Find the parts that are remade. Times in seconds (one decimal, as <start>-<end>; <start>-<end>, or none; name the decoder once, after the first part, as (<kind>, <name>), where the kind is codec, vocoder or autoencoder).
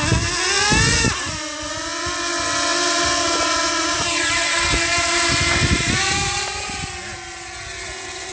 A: 2.7-5.8 (vocoder, BigVGAN v2)